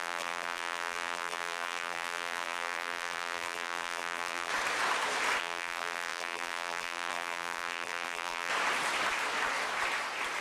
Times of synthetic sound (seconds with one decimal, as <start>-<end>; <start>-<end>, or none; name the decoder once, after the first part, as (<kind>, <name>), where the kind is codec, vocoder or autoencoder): 0.0-4.5 (vocoder, BigVGAN v2); 5.4-8.5